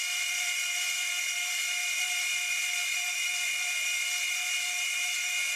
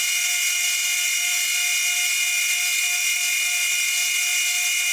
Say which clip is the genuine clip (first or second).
second